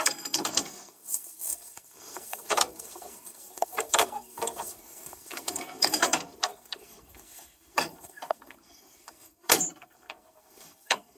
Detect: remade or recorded remade